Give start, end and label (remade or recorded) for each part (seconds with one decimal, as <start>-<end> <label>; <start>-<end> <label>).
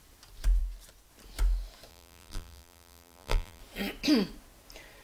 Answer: 0.0-1.9 recorded; 1.9-3.6 remade; 3.6-5.0 recorded